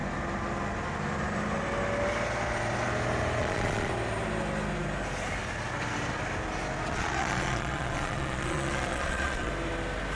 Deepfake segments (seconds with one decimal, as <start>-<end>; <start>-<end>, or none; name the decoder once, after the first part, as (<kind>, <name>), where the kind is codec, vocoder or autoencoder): 3.4-3.9 (vocoder, Vocos); 6.9-9.5

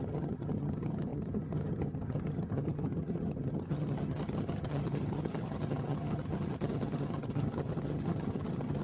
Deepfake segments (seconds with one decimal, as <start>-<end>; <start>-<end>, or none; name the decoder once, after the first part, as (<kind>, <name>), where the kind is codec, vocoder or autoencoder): 0.0-8.8 (vocoder, HiFi-GAN)

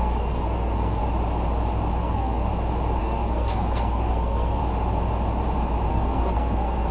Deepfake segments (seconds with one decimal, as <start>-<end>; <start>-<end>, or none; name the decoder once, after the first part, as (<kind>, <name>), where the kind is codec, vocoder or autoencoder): 0.0-1.0 (codec, SNAC); 2.0-2.5; 3.0-4.6; 5.9-6.9

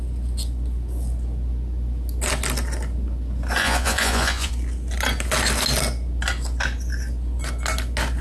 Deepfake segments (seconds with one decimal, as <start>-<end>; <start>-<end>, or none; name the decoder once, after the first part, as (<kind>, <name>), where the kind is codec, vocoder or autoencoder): 3.6-4.5 (vocoder, Vocos)